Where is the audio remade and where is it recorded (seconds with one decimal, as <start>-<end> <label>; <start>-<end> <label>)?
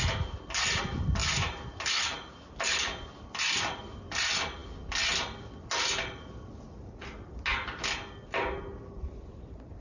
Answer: 0.0-9.8 recorded